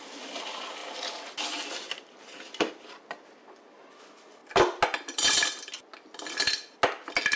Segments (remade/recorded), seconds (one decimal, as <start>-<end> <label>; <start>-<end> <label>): 0.0-7.4 recorded